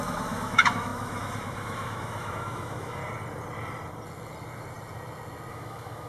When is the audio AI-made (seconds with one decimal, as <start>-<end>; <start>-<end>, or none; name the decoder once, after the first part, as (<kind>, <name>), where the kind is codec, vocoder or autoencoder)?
0.0-3.0 (autoencoder, DAC-VAE); 5.5-6.1